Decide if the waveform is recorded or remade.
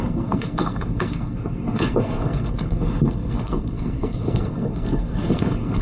remade